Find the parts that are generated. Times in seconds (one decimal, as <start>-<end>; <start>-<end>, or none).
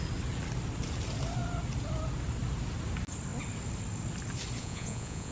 4.6-5.3